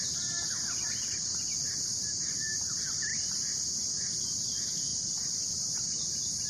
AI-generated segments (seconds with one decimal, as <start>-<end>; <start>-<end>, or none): 2.0-2.7; 3.1-3.6; 4.9-6.5